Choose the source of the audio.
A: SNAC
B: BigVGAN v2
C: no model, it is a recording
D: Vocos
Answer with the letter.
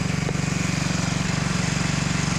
C